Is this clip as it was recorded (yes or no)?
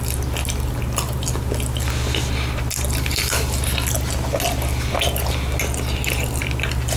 yes